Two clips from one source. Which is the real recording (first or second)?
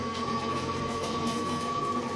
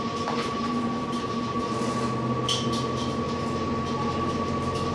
second